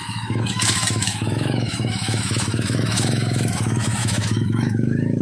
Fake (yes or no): yes